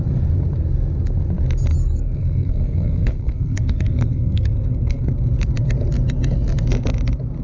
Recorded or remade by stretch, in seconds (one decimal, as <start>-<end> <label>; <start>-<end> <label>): 0.0-1.8 recorded; 1.8-5.1 remade; 5.1-7.4 recorded